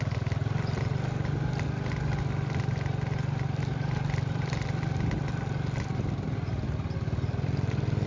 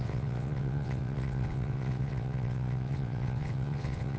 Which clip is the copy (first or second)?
second